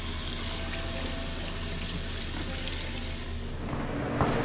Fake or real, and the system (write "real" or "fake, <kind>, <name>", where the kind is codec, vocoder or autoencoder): real